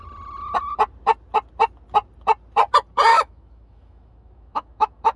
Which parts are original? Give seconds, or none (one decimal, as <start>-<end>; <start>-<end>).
0.0-3.1